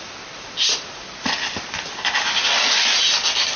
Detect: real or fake real